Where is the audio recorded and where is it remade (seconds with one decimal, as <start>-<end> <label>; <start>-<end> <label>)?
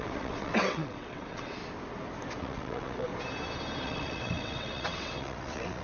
0.0-1.6 remade; 1.6-2.4 recorded; 2.4-3.1 remade; 3.1-3.8 recorded; 3.8-5.8 remade